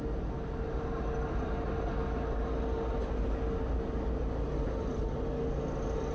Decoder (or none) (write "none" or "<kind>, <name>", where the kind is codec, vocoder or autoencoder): none